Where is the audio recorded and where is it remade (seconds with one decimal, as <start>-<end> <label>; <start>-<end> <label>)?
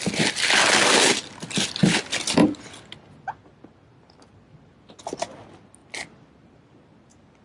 0.0-7.4 recorded